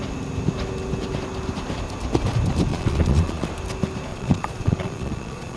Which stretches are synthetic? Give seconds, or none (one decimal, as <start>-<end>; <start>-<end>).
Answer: 2.7-3.5; 4.1-5.6